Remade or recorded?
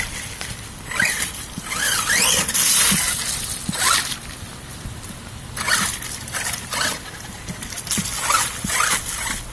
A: recorded